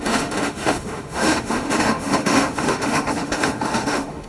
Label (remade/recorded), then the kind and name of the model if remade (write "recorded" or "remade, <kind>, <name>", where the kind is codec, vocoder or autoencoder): remade, autoencoder, DAC-VAE